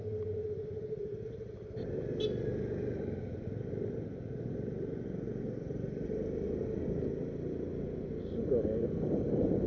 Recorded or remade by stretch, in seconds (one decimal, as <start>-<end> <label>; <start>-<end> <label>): 0.0-9.7 recorded